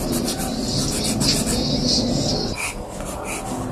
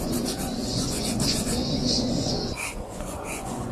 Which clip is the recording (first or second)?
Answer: first